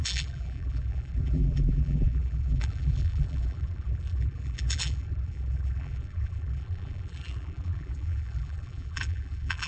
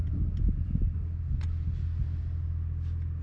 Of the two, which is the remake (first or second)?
first